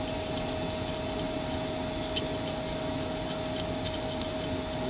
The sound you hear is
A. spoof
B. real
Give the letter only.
B